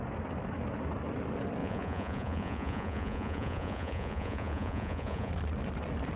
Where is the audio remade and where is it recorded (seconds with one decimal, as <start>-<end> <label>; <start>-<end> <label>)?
0.0-1.6 recorded; 1.6-5.3 remade; 5.3-6.2 recorded